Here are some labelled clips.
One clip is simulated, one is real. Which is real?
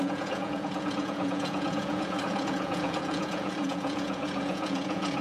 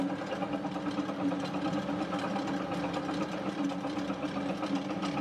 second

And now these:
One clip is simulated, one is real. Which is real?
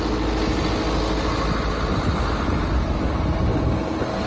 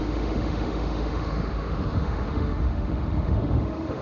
first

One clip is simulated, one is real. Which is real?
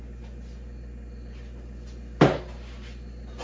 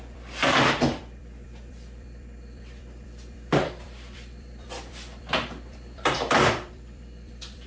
first